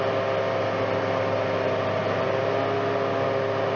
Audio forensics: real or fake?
real